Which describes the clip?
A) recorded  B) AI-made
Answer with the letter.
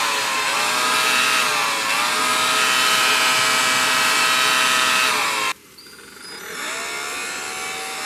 A